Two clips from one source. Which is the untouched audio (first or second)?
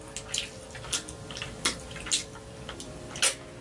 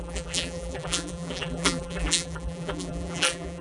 first